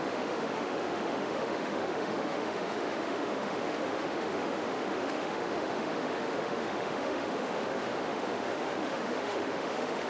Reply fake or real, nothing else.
fake